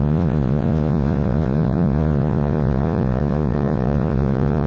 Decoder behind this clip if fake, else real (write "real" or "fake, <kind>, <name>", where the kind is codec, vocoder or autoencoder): fake, vocoder, Vocos